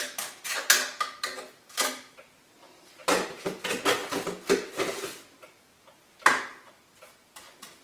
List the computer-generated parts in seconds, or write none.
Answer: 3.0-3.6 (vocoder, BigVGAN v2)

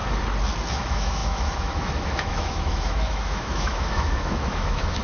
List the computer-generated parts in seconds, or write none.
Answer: 0.7-5.0 (autoencoder, DAC-VAE)

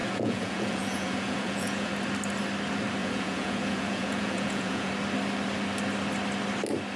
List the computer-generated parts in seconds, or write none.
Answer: 0.0-1.9 (vocoder, Vocos); 3.0-4.9

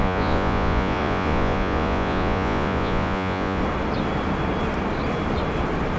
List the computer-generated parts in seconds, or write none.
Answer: 0.0-3.6 (vocoder, Vocos)

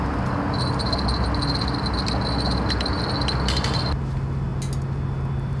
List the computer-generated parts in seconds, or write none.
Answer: none

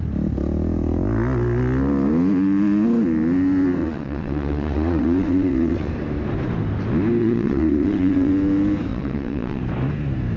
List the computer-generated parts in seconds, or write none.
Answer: 3.8-5.9 (vocoder, WaveNeXt); 7.2-8.3; 8.9-9.6

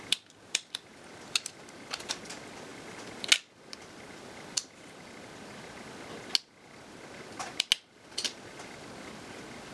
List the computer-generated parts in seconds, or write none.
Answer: 2.7-3.3 (vocoder, BigVGAN v2)

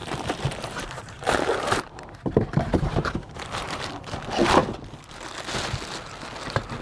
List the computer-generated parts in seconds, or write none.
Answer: 0.0-3.9 (vocoder, BigVGAN v2)